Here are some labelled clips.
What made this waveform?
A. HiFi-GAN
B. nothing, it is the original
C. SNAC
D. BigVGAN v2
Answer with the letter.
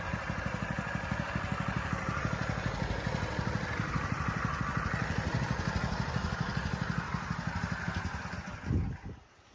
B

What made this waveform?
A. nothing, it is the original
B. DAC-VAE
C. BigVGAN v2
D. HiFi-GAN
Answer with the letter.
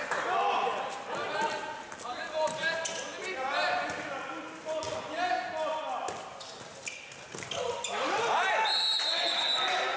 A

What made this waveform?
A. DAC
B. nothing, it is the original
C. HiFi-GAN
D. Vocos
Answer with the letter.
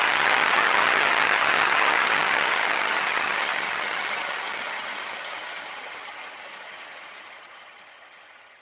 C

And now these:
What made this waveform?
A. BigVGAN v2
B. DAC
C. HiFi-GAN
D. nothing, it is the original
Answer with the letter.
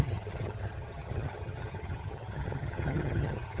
C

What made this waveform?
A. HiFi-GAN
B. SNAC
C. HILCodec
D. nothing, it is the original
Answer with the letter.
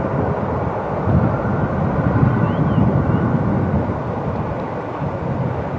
D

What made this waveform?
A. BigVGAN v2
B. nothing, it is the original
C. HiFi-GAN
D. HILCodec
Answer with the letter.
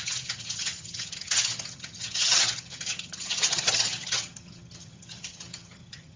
C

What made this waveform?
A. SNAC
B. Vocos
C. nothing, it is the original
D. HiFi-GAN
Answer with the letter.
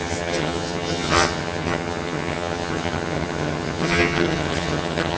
D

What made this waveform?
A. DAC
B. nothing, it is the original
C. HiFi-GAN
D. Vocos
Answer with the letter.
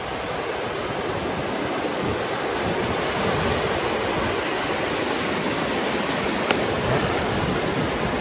B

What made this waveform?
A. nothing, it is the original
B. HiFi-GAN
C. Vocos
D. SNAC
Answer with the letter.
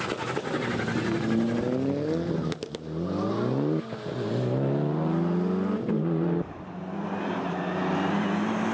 A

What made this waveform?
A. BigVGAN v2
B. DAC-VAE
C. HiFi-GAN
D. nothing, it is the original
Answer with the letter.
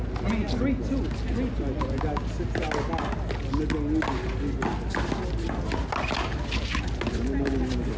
D